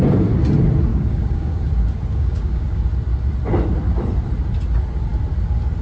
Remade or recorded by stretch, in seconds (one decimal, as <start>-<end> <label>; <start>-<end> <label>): 0.0-0.9 recorded; 0.9-1.6 remade; 1.6-2.1 recorded; 2.1-2.8 remade; 2.8-5.8 recorded